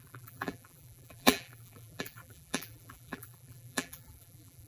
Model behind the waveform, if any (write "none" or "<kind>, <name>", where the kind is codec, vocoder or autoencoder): vocoder, BigVGAN v2